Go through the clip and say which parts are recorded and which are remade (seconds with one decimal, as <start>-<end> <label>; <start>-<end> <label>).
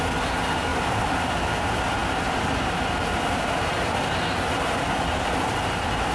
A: 0.0-0.7 recorded; 0.7-1.3 remade; 1.3-6.1 recorded